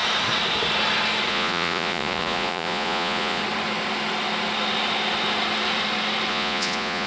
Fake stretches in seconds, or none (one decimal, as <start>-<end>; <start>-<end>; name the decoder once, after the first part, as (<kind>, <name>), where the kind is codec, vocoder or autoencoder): 1.3-3.4 (vocoder, Vocos); 6.3-7.1